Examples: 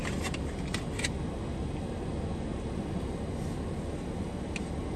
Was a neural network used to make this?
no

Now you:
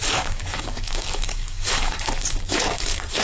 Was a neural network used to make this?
yes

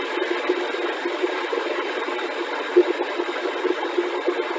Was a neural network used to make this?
no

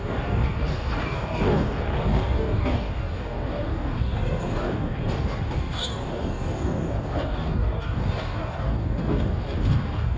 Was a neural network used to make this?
yes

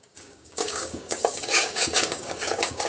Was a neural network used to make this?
yes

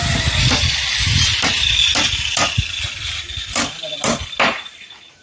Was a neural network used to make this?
no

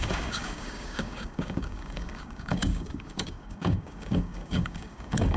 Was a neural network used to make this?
yes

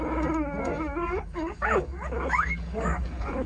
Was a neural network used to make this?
yes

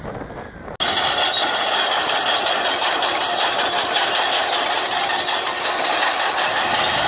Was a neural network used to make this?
no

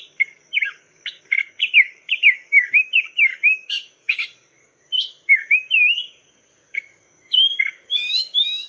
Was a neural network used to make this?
yes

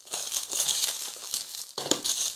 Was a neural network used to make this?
yes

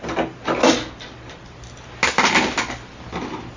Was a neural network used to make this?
no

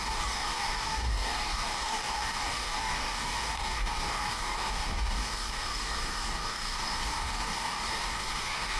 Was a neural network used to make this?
yes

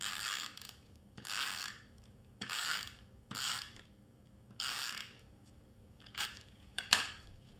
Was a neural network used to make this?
yes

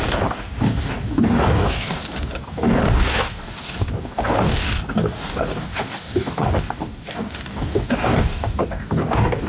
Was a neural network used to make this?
yes